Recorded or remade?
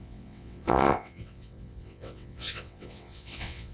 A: remade